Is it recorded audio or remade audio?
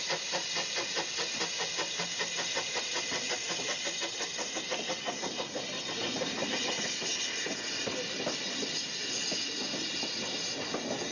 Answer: recorded